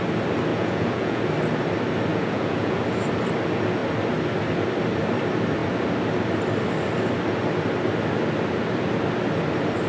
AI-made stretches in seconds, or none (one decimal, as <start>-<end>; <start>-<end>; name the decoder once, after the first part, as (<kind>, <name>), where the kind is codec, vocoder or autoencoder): 0.5-1.2 (vocoder, Vocos); 2.1-2.8